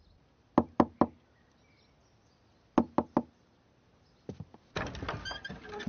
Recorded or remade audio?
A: recorded